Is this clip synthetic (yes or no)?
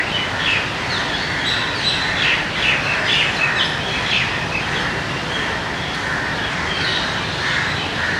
no